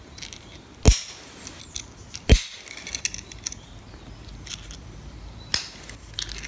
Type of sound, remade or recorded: recorded